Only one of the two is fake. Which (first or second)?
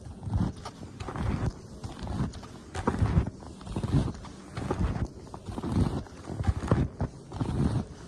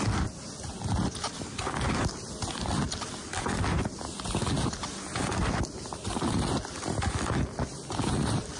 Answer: second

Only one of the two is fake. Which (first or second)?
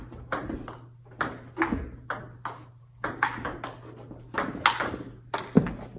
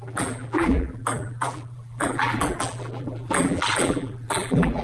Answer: second